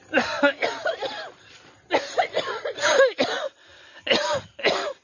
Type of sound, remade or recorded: recorded